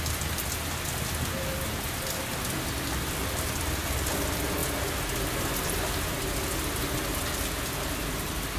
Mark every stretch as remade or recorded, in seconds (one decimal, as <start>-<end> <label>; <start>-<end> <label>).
0.0-8.6 recorded